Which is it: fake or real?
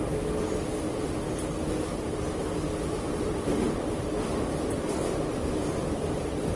real